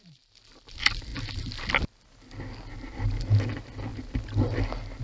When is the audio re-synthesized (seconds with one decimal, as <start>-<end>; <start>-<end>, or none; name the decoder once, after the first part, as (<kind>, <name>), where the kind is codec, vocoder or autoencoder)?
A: none